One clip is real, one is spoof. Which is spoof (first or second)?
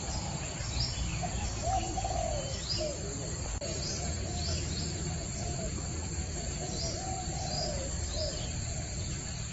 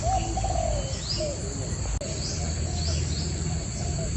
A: first